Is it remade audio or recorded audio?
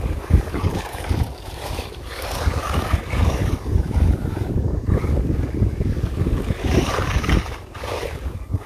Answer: remade